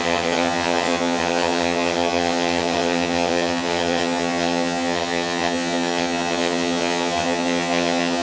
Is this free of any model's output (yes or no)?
no